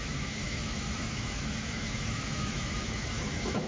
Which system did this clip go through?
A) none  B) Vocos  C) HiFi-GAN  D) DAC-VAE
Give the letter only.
D